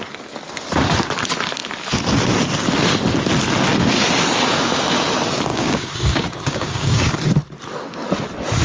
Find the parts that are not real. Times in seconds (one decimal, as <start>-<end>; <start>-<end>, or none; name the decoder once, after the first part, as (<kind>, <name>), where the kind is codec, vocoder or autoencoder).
5.5-7.1 (codec, DAC)